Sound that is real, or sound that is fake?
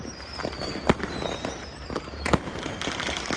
fake